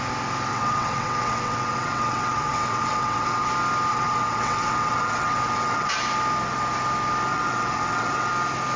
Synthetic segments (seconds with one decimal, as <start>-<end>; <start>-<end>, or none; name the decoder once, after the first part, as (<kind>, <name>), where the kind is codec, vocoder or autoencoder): 0.5-3.5 (vocoder, WaveNeXt); 3.9-5.9; 7.3-8.3